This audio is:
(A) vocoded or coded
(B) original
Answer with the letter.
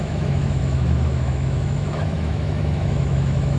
A